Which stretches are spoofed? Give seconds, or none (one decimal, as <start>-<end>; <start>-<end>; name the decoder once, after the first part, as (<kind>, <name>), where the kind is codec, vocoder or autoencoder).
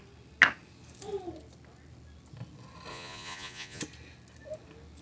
2.9-3.8 (vocoder, Vocos)